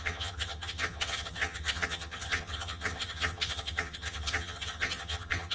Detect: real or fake fake